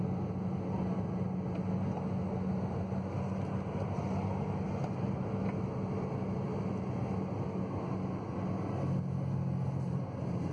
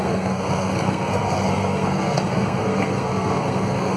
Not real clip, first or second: second